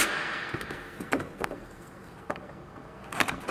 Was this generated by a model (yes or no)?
yes